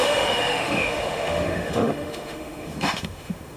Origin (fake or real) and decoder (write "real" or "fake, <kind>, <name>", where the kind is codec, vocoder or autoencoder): fake, autoencoder, DAC-VAE